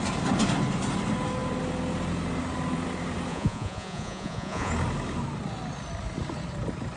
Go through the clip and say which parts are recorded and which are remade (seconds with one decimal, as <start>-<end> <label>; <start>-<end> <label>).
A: 0.0-3.3 recorded; 3.3-4.7 remade; 4.7-7.0 recorded